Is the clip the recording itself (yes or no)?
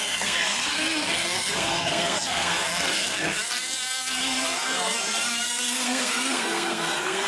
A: no